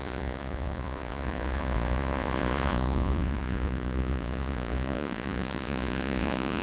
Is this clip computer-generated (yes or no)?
yes